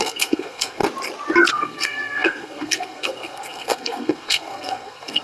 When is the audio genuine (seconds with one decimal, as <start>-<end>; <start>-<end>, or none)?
0.8-1.5